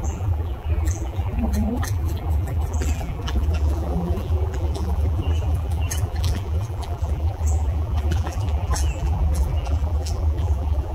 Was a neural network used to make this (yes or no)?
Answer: yes